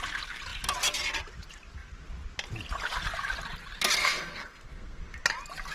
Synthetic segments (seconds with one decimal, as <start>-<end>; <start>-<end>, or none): 4.0-5.0